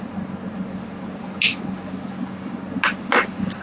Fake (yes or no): no